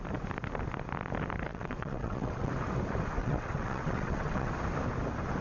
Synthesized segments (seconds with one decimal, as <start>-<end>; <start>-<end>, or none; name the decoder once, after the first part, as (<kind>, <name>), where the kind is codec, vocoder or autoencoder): 1.5-2.5 (vocoder, WaveNeXt); 3.2-4.5